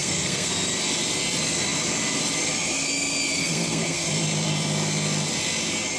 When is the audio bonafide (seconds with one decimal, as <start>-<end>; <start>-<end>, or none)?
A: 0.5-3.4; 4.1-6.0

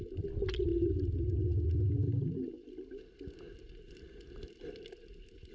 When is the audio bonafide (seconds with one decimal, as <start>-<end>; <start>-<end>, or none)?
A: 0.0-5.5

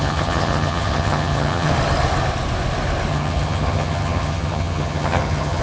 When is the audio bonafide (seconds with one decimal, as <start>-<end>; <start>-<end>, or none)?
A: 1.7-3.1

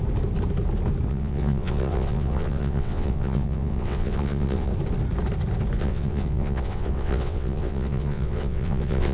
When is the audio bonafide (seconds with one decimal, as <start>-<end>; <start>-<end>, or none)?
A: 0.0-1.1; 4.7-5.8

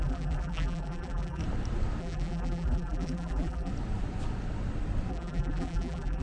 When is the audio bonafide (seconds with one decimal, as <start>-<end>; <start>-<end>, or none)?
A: 1.4-2.0; 3.7-5.1

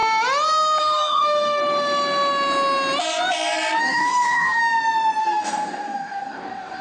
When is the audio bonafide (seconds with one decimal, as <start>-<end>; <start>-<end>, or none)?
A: 0.0-0.8; 1.6-3.8; 4.6-5.2